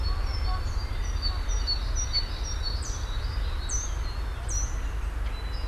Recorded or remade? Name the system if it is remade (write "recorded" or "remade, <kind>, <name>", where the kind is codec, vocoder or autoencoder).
recorded